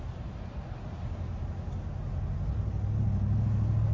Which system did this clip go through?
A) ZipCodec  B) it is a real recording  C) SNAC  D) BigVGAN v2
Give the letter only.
B